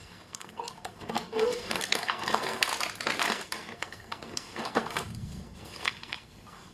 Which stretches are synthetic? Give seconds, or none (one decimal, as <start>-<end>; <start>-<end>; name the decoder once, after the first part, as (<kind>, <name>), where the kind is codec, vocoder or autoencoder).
0.0-2.7 (codec, SNAC); 3.2-6.7